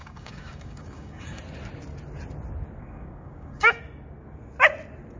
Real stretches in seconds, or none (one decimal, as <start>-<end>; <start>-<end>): 1.4-2.8; 3.8-5.2